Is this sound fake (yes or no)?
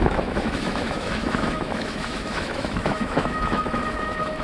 yes